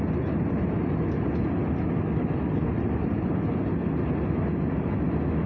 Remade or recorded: recorded